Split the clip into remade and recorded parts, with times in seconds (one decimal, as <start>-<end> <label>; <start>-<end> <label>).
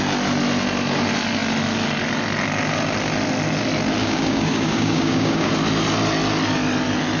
0.0-4.0 recorded; 4.0-5.5 remade; 5.5-7.2 recorded